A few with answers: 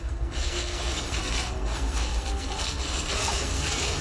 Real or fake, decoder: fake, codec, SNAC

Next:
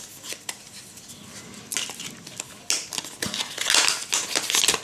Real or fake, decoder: real